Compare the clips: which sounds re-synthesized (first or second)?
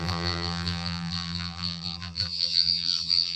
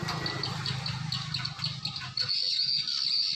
first